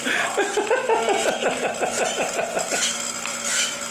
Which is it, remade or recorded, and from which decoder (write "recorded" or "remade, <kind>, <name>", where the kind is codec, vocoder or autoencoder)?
recorded